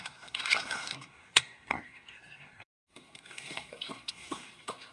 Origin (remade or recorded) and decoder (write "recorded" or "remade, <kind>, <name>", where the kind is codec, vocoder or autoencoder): remade, codec, SNAC